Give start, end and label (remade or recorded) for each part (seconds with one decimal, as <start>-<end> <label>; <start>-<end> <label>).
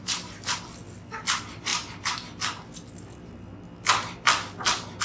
0.0-5.0 recorded